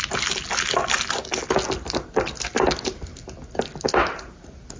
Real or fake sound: real